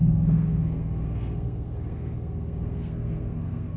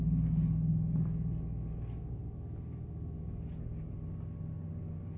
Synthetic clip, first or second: first